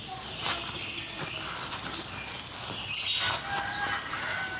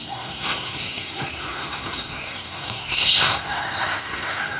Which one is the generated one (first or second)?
second